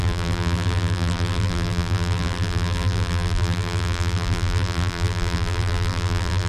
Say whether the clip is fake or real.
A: fake